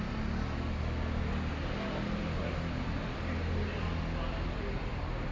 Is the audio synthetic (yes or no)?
no